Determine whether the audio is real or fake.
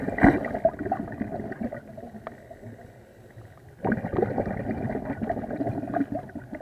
real